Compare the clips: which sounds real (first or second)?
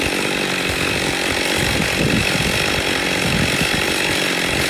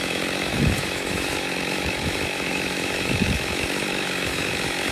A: first